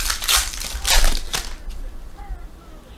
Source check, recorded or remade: recorded